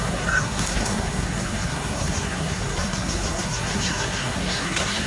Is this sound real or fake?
fake